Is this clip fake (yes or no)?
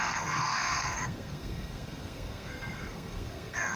yes